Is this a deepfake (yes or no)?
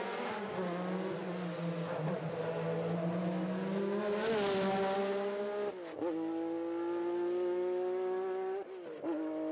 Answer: no